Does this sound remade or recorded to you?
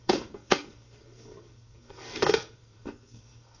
remade